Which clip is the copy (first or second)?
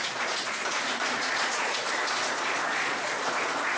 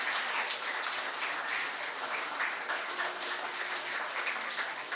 first